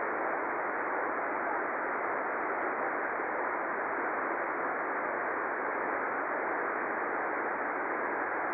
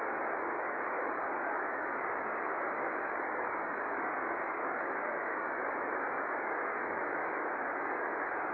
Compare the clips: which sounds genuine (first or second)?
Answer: first